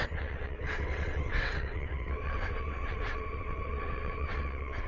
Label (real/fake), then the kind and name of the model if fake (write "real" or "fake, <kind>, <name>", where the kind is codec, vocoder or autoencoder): fake, vocoder, WaveNeXt